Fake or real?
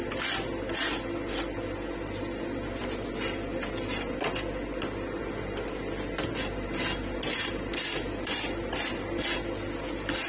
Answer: real